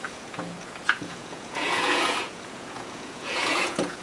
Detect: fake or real fake